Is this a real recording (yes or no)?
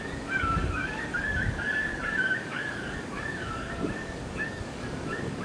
no